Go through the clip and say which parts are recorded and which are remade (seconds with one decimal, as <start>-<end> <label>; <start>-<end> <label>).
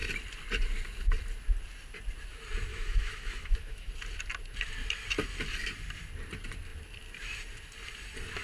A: 0.0-2.7 recorded; 2.7-3.9 remade; 3.9-8.4 recorded